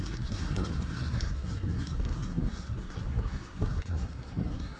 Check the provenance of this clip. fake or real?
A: fake